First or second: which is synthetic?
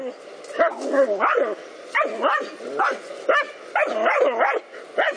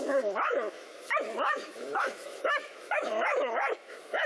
second